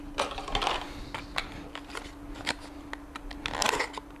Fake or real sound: real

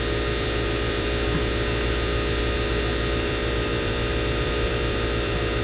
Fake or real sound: fake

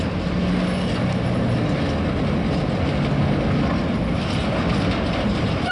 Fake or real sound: real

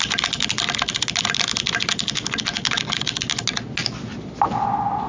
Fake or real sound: real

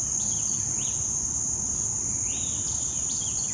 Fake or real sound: fake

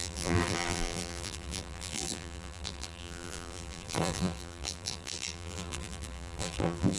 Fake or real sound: fake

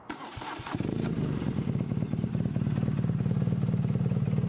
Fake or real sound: fake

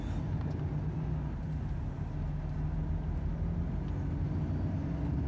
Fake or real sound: real